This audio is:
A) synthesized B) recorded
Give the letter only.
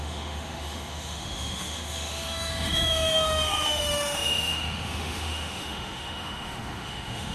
A